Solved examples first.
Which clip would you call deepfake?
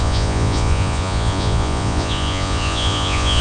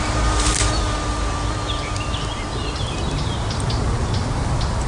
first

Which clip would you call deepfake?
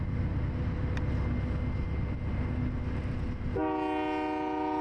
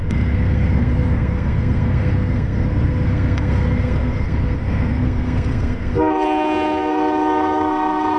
second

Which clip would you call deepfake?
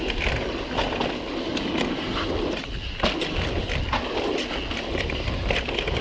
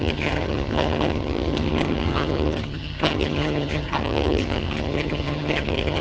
second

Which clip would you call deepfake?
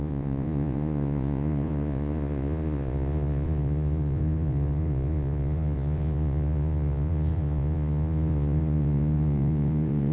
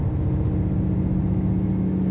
first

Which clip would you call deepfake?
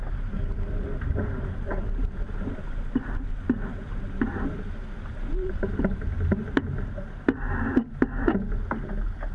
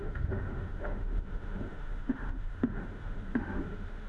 second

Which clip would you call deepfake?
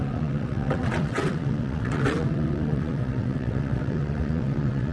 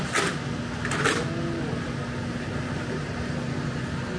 first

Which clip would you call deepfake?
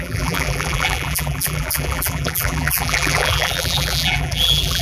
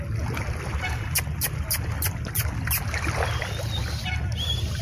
first